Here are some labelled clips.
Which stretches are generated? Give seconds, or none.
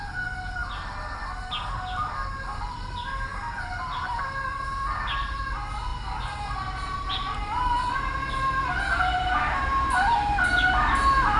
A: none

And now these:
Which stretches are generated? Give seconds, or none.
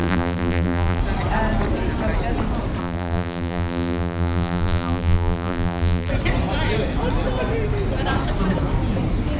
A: 0.0-1.0; 2.8-6.1